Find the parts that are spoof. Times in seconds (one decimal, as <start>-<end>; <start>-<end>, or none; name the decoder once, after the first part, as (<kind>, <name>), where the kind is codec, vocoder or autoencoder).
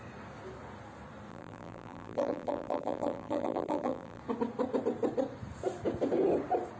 1.3-4.2 (vocoder, BigVGAN v2)